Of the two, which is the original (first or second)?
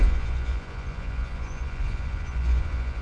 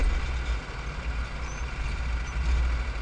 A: second